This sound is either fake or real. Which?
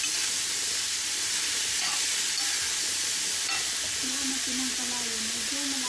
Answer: real